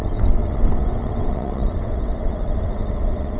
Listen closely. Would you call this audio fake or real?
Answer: fake